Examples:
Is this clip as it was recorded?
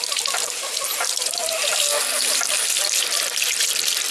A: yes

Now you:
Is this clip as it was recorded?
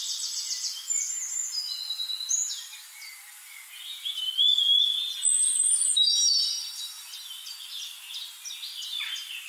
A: yes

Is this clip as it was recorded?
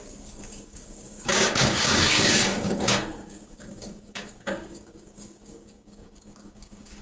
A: no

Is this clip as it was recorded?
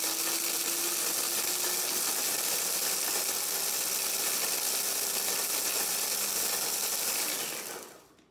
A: yes